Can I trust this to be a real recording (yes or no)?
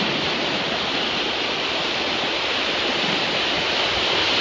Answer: no